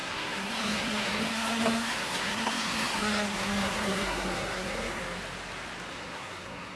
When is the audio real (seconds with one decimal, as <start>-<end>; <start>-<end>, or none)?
5.0-5.9